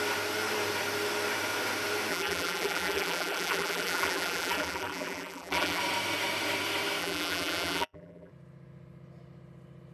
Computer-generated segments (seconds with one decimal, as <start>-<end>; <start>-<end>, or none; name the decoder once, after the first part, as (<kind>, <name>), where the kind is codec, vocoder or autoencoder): 2.1-5.8 (vocoder, BigVGAN v2); 7.0-8.3